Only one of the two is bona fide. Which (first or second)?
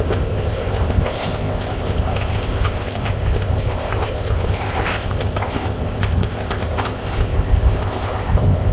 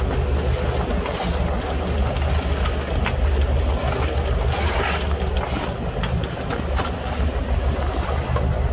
second